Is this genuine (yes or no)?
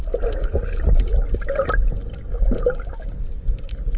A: yes